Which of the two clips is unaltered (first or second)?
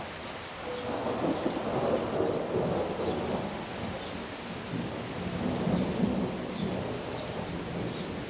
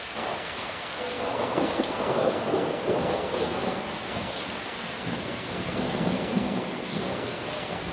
first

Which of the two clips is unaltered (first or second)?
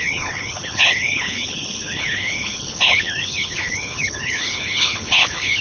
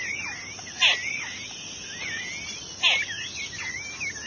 second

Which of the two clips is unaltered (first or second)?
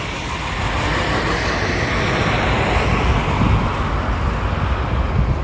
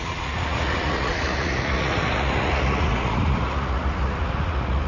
first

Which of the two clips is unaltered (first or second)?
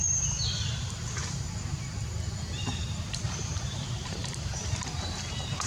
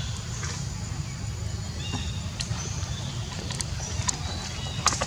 second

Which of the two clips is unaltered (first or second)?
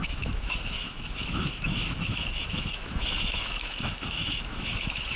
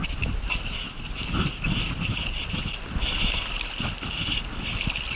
second